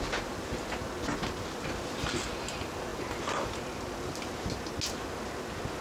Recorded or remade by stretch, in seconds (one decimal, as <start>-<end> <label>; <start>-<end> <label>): 0.0-5.8 recorded